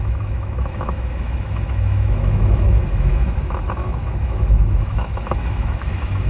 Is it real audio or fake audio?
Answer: fake